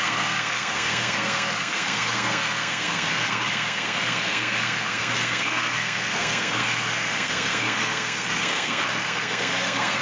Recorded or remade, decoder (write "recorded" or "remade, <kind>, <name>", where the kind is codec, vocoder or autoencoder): remade, codec, SNAC